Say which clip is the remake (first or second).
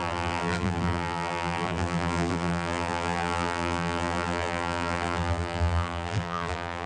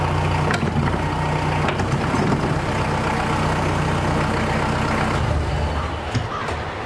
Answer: first